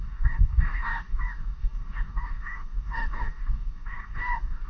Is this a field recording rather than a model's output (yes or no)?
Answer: no